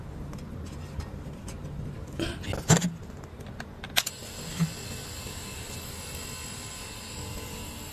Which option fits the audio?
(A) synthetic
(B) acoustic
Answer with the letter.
B